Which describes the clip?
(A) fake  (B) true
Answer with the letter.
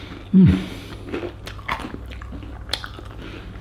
B